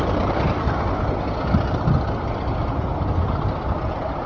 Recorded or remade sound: recorded